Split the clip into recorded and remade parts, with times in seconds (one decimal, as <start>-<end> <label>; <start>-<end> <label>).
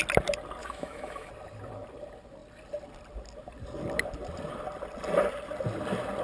0.0-0.6 recorded; 0.6-1.3 remade; 1.3-6.2 recorded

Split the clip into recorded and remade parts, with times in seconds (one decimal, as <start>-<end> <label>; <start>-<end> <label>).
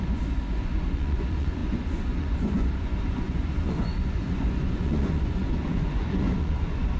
0.0-7.0 remade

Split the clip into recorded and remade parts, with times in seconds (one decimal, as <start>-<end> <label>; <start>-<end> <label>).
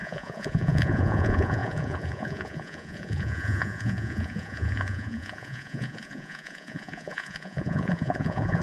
0.0-8.6 remade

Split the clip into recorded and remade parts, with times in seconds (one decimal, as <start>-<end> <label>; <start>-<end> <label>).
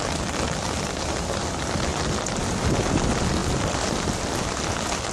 0.0-5.1 recorded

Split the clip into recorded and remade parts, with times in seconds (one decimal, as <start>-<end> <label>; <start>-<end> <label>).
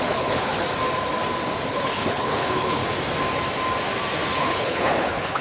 0.0-0.5 remade; 0.5-1.7 recorded; 1.7-2.8 remade; 2.8-4.4 recorded; 4.4-5.4 remade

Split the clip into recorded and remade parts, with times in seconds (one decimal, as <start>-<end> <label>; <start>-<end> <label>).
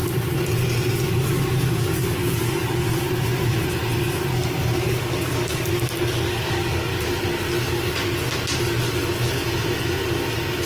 0.0-1.0 recorded; 1.0-2.9 remade; 2.9-4.7 recorded; 4.7-6.9 remade; 6.9-10.7 recorded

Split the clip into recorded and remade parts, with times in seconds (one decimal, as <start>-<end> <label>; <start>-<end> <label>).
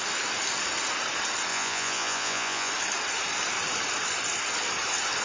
0.0-1.5 recorded; 1.5-2.7 remade; 2.7-5.2 recorded